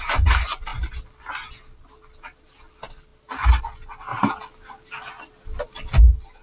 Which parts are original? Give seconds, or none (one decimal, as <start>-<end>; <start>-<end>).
0.0-6.4